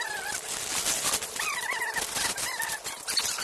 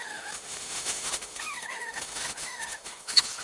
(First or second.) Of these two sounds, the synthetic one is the second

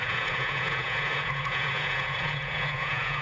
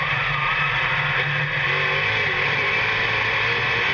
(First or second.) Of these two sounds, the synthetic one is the first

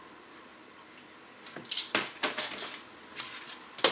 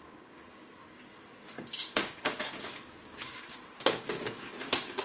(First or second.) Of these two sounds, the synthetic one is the second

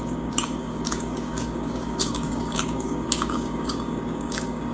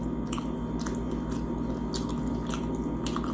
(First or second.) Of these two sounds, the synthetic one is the first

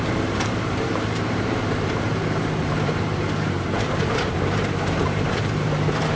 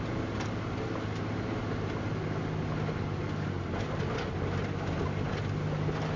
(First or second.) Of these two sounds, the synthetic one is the first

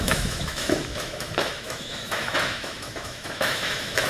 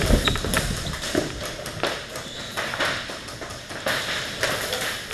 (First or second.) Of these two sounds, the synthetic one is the first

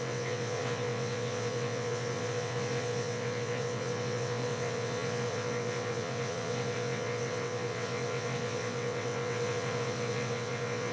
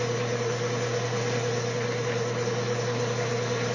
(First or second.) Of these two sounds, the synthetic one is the first